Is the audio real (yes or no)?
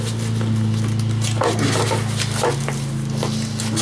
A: yes